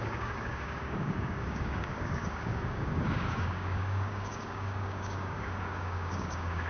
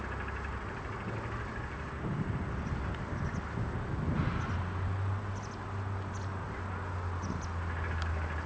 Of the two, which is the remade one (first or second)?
first